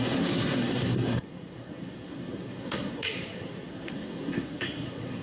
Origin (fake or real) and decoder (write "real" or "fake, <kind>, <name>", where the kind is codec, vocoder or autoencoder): fake, codec, SNAC